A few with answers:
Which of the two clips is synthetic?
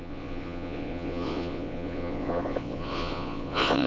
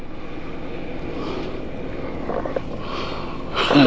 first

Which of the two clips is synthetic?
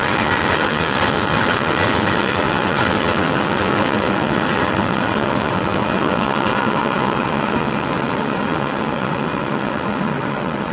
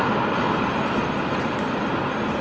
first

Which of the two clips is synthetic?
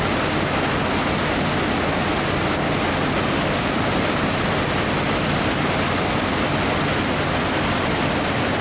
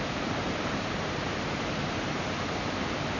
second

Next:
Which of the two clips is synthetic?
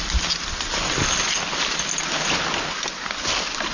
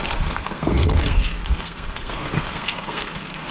second